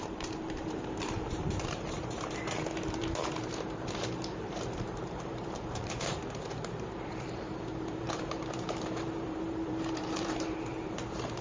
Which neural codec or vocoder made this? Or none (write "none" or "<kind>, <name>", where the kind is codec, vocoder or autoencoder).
vocoder, BigVGAN v2